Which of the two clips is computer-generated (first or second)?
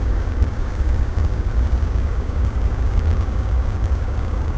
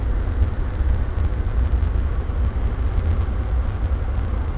first